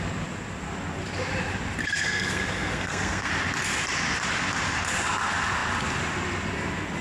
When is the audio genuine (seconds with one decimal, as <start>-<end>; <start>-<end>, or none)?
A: 0.0-1.8; 3.3-7.0